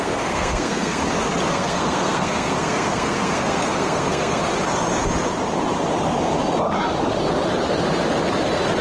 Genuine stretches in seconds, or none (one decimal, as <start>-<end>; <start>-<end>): 1.0-1.5; 4.4-8.8